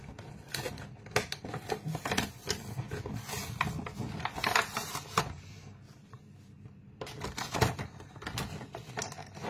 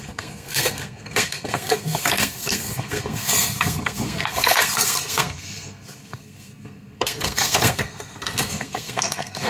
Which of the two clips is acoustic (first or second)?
first